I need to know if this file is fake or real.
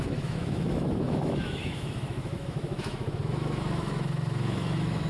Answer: fake